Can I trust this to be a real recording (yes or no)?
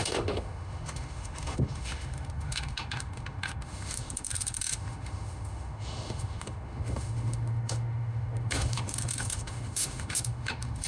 no